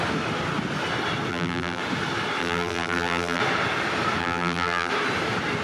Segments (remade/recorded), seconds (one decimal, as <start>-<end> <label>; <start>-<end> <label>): 0.0-1.3 recorded; 1.3-1.8 remade; 1.8-2.4 recorded; 2.4-3.4 remade; 3.4-4.2 recorded; 4.2-4.9 remade; 4.9-5.6 recorded

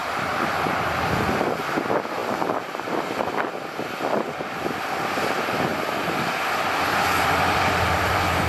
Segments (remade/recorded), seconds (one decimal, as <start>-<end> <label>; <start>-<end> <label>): 0.0-8.5 remade

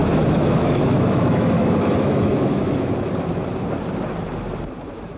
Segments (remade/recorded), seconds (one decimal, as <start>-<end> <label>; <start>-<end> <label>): 0.0-3.1 remade; 3.1-5.2 recorded